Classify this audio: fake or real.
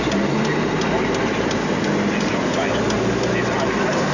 real